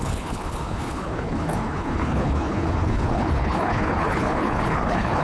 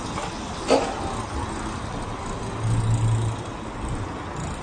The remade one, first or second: first